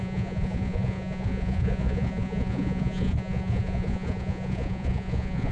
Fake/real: fake